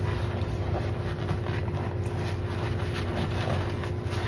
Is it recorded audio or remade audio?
recorded